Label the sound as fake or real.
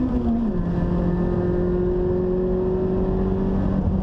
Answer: real